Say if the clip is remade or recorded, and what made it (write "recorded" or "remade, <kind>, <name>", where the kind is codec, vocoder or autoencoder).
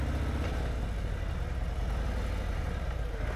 recorded